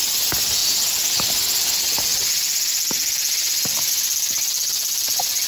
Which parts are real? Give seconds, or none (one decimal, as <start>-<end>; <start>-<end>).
0.0-5.5